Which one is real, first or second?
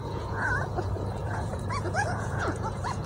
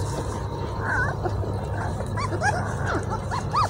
second